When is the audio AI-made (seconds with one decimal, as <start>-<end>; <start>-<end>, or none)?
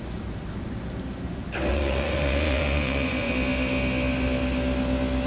1.7-3.3